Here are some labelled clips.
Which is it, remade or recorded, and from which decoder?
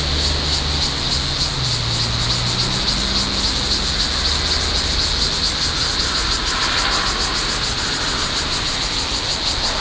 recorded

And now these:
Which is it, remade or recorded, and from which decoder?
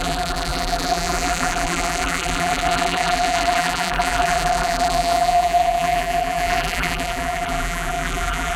remade, vocoder, BigVGAN v2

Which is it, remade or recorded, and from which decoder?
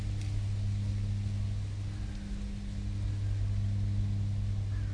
recorded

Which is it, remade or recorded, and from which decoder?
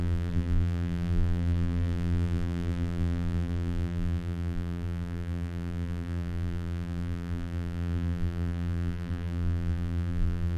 remade, vocoder, BigVGAN v2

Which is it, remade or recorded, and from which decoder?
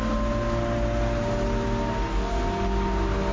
recorded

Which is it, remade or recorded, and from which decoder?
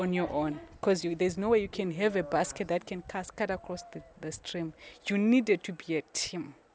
recorded